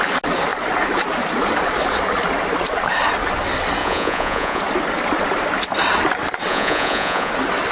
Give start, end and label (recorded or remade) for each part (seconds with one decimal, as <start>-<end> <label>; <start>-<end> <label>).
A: 0.0-3.8 recorded; 3.8-4.6 remade; 4.6-6.5 recorded; 6.5-7.3 remade; 7.3-7.7 recorded